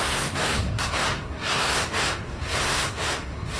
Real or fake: fake